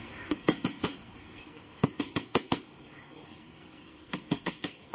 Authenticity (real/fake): fake